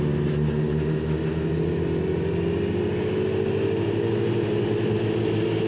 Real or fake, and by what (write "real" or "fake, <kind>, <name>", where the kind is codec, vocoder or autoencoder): real